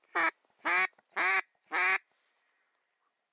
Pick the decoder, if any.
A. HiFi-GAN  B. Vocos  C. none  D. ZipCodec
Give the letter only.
C